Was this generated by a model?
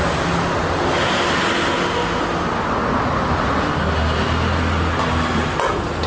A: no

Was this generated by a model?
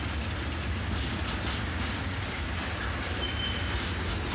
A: no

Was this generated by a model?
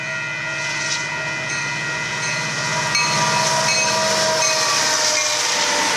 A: no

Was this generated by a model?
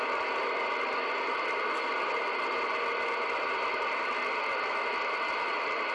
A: no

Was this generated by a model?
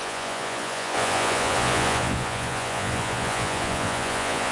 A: yes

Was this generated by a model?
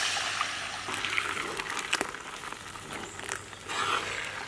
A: no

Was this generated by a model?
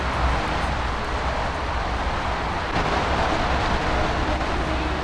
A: no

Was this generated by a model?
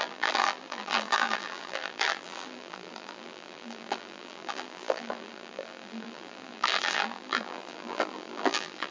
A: yes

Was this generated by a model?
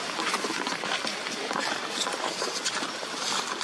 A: no